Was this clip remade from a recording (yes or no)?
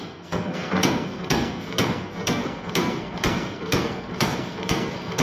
yes